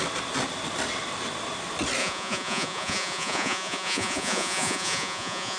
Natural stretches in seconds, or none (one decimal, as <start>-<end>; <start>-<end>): 0.0-2.0